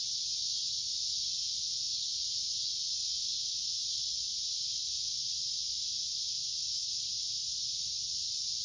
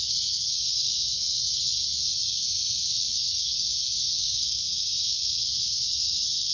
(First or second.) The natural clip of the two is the first